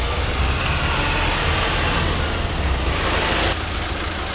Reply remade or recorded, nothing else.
recorded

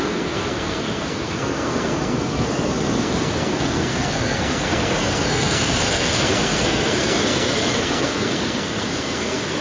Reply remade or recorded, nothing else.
remade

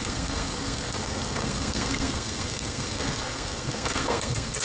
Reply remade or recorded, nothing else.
remade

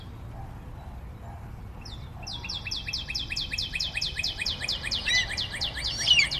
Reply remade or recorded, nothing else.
recorded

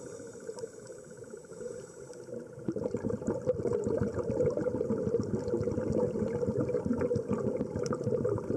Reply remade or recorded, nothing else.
recorded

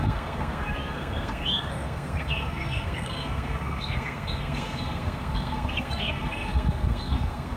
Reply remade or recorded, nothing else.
remade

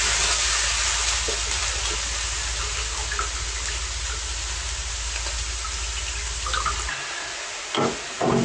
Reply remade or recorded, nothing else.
recorded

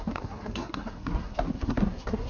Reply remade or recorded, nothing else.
remade